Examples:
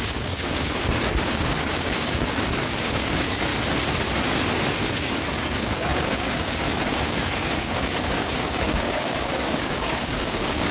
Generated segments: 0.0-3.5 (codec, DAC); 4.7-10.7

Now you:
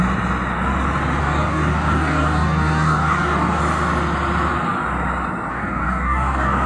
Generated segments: 1.2-3.6 (codec, DAC); 5.5-6.7

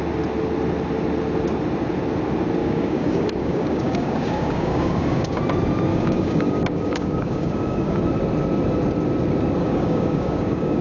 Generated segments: 2.6-5.4 (codec, DAC); 5.9-8.0; 9.6-10.8

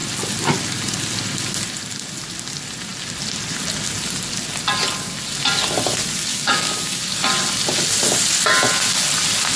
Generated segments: 6.3-7.0 (codec, DAC)

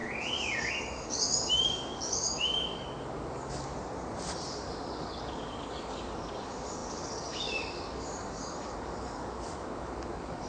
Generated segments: 0.7-3.7 (codec, DAC); 4.5-10.5

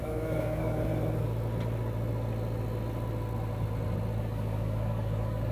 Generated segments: 0.0-0.9 (codec, DAC); 4.2-5.5

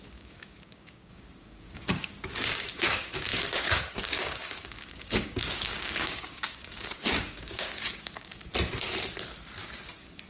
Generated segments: 0.0-8.5 (codec, DAC); 9.9-10.3

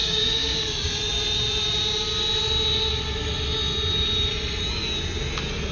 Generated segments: 0.0-0.6 (codec, DAC)